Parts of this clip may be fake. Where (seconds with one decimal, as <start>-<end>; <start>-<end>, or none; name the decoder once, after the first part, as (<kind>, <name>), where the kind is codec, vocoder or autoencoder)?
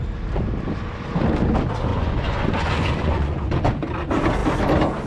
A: 1.9-3.7 (vocoder, Vocos)